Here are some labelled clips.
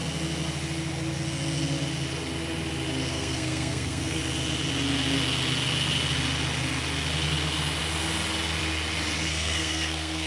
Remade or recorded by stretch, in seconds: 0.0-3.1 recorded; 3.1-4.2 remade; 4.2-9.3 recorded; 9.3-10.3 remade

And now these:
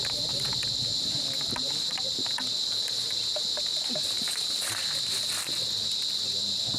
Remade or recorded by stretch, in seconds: 0.0-0.9 recorded; 0.9-1.7 remade; 1.7-3.7 recorded; 3.7-4.7 remade; 4.7-6.8 recorded

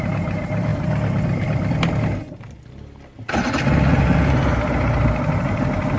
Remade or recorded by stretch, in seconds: 0.0-0.7 remade; 0.7-3.9 recorded; 3.9-6.0 remade

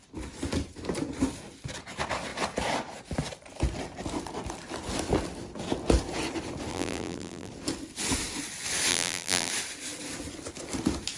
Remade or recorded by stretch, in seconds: 0.0-6.7 recorded; 6.7-7.5 remade; 7.5-8.9 recorded; 8.9-9.5 remade; 9.5-11.2 recorded

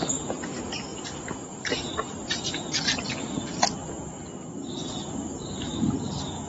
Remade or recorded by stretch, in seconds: 0.0-0.9 recorded; 0.9-2.7 remade; 2.7-6.5 recorded

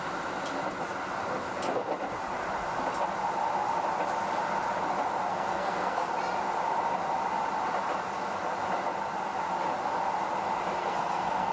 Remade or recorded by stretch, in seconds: 0.0-5.3 recorded; 5.3-6.1 remade; 6.1-10.8 recorded; 10.8-11.5 remade

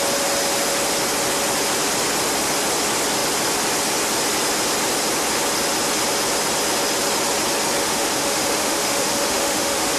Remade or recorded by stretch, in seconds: 0.0-7.8 recorded; 7.8-10.0 remade

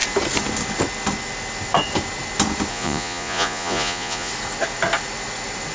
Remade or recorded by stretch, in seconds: 0.0-2.7 recorded; 2.7-4.3 remade; 4.3-5.7 recorded